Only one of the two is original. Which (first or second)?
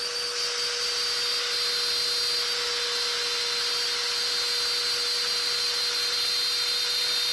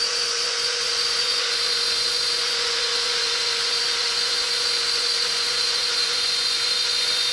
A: first